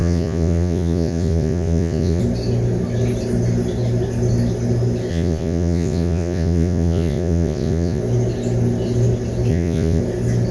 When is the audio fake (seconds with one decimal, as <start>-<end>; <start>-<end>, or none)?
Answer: 0.0-2.2; 5.1-8.0; 9.5-10.0

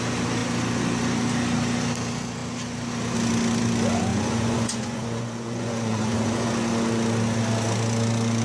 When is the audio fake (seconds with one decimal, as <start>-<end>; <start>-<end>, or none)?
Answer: 4.1-6.5